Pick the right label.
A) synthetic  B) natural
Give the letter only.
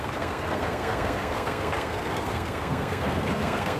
A